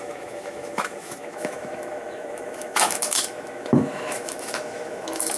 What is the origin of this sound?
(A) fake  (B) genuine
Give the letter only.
A